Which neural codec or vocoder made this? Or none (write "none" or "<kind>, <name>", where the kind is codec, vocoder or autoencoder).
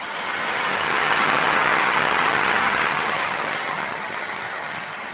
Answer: vocoder, HiFi-GAN